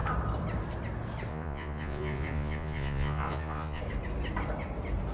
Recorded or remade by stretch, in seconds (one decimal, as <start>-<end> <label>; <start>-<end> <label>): 0.0-1.3 recorded; 1.3-3.8 remade; 3.8-5.1 recorded